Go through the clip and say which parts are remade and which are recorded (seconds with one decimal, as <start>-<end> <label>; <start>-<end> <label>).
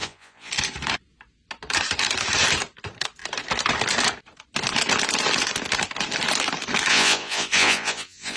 0.0-0.5 remade; 0.5-6.9 recorded; 6.9-8.4 remade